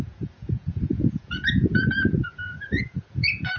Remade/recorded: remade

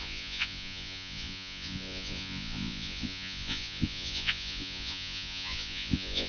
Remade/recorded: remade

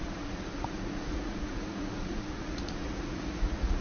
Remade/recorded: remade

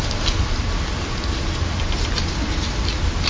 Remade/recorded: recorded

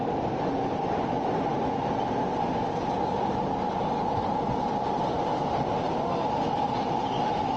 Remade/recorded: recorded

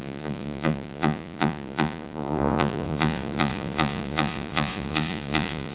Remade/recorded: remade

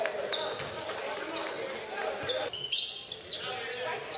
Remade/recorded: recorded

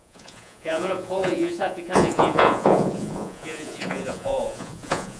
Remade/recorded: remade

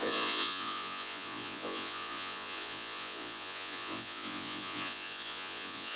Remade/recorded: remade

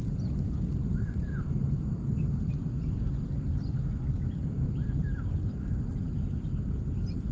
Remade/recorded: recorded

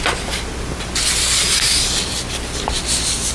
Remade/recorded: recorded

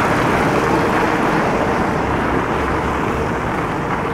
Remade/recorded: recorded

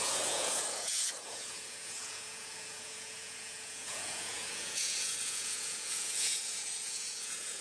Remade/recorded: remade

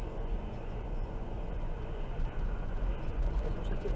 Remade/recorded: remade